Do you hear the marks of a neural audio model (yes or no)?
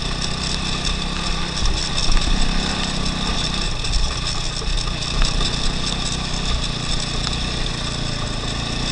no